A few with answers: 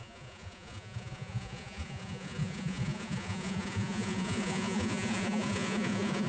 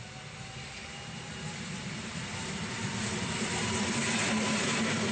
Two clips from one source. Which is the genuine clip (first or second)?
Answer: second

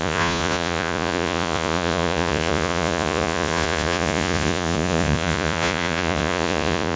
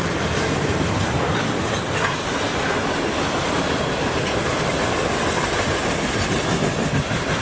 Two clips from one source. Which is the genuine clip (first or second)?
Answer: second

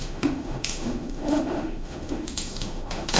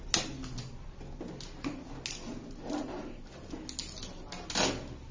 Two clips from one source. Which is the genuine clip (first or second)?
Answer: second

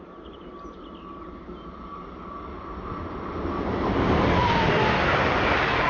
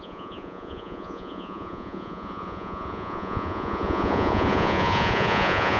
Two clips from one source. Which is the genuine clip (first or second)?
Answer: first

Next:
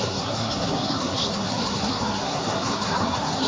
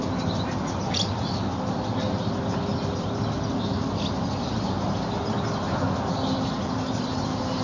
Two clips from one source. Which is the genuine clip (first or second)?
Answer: second